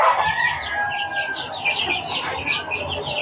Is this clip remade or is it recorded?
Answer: recorded